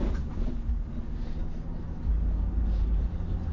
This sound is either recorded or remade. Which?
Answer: recorded